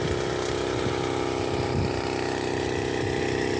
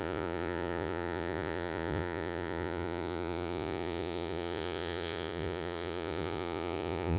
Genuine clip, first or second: first